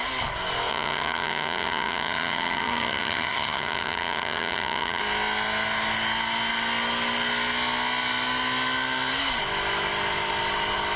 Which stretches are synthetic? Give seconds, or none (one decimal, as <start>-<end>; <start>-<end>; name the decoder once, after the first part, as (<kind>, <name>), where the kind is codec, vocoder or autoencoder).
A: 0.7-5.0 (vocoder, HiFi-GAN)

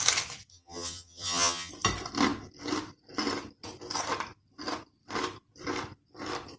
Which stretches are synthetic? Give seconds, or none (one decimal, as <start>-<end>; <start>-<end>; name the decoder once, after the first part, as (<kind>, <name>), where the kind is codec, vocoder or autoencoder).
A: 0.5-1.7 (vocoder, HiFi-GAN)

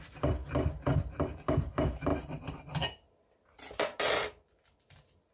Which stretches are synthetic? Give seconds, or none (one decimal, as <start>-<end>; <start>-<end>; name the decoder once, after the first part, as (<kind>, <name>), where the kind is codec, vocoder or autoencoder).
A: none

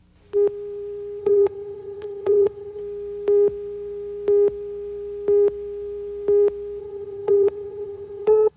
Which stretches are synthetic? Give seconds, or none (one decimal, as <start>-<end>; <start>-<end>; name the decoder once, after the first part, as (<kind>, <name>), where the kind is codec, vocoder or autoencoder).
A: 1.2-2.8 (vocoder, HiFi-GAN); 6.8-8.6

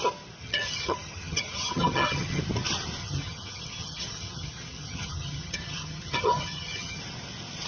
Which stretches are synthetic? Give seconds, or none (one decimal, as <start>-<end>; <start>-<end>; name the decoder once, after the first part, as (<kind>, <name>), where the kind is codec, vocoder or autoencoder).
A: 0.4-2.4 (vocoder, HiFi-GAN); 3.0-7.0

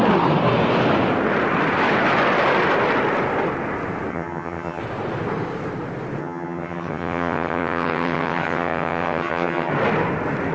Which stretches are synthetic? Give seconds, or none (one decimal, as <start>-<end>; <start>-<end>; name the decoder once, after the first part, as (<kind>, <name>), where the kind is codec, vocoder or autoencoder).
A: 4.1-4.8 (vocoder, HiFi-GAN); 6.2-9.7